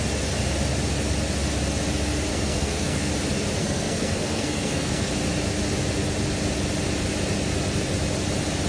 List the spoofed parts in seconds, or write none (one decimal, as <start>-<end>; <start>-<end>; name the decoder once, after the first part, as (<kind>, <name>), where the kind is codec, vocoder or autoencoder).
2.3-3.1 (codec, SNAC); 3.6-5.1